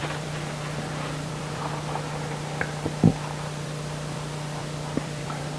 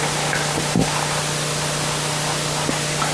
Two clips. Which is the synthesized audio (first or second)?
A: first